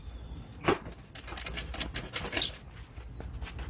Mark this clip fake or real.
real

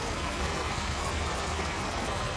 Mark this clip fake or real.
fake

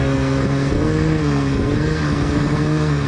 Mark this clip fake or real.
fake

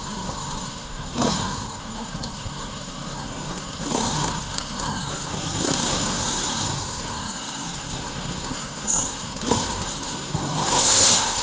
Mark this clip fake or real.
fake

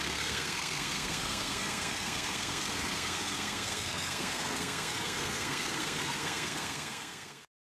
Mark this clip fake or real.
fake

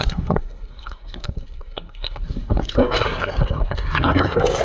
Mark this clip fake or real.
fake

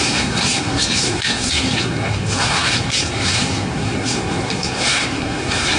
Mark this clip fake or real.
fake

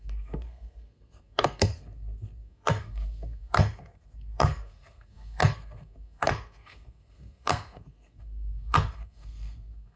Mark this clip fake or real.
fake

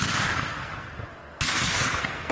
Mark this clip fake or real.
fake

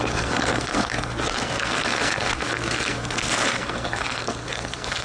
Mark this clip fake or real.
fake